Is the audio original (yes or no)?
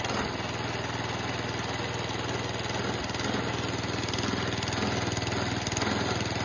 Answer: yes